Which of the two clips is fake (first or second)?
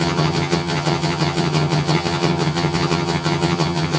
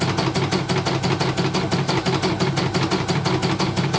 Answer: first